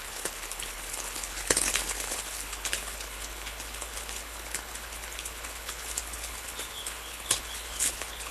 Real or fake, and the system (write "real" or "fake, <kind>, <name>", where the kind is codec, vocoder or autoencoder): fake, codec, HILCodec